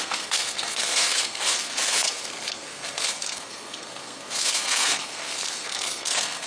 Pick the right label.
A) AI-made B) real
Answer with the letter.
A